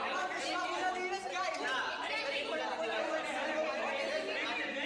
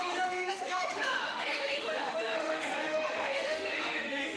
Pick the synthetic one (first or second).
second